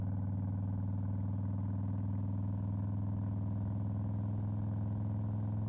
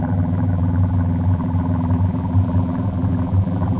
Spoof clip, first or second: second